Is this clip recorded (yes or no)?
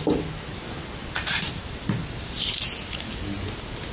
yes